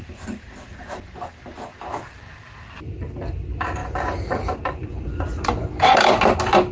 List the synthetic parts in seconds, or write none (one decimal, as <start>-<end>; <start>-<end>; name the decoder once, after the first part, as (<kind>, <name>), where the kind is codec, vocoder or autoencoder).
3.8-5.8 (vocoder, BigVGAN v2)

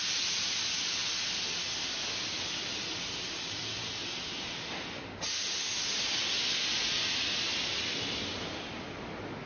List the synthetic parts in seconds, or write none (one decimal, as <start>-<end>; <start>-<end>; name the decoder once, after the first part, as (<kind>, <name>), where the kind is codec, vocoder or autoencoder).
3.6-4.7 (vocoder, BigVGAN v2)

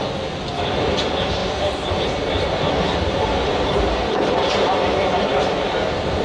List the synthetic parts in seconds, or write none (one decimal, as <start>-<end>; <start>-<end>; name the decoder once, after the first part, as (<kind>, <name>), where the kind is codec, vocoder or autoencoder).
0.6-5.3 (vocoder, BigVGAN v2)

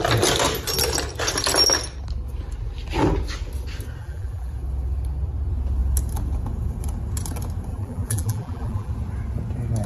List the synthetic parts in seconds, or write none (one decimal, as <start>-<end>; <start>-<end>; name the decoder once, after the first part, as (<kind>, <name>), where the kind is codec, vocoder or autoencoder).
4.0-4.5 (vocoder, BigVGAN v2); 7.7-8.9

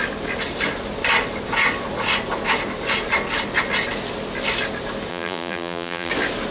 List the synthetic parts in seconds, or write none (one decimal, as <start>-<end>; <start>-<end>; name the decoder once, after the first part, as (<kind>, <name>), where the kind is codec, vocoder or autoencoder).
5.1-6.1 (vocoder, BigVGAN v2)

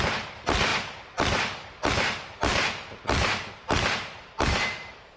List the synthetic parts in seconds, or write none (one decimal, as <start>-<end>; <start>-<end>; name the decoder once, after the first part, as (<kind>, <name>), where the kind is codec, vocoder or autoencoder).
none

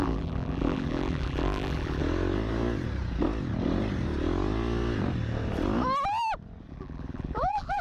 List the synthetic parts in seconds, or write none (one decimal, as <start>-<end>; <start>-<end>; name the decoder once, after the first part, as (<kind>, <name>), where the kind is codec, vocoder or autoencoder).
0.0-2.0 (vocoder, BigVGAN v2); 6.7-7.8

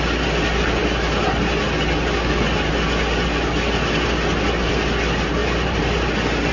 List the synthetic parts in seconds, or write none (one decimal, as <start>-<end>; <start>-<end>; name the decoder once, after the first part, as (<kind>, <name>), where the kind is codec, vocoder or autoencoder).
5.4-6.1 (vocoder, BigVGAN v2)